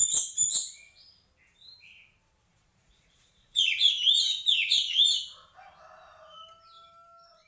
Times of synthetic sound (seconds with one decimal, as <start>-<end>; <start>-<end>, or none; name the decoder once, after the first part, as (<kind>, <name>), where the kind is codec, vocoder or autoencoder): 2.5-4.1 (vocoder, Vocos); 4.5-5.0